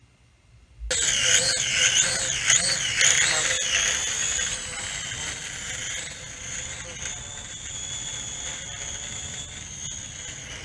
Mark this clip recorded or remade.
recorded